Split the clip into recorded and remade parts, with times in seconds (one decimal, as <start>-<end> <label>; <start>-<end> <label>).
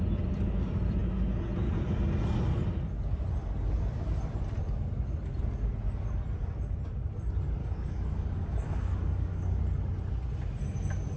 0.0-7.6 recorded; 7.6-9.6 remade; 9.6-11.2 recorded